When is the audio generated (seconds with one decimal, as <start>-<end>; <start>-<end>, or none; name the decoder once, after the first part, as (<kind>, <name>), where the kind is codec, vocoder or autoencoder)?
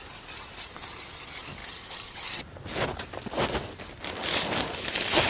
none